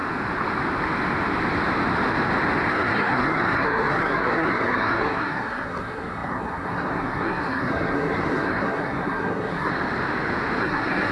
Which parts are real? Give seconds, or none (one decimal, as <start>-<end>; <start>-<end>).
0.0-2.7; 9.7-10.6